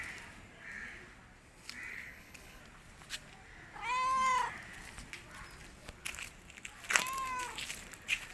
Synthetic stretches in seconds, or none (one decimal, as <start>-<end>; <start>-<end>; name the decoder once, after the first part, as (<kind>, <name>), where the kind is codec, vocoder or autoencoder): 1.9-2.6 (codec, HILCodec)